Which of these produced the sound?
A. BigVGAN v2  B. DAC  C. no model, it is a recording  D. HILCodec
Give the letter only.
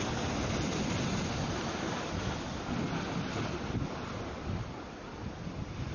C